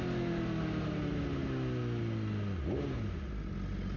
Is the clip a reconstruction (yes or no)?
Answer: no